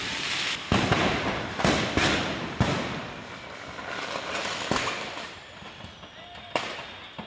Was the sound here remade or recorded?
recorded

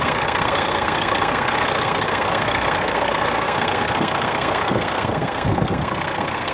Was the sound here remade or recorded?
remade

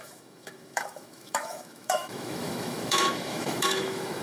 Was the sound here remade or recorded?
remade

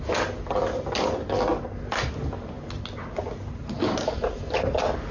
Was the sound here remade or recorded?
recorded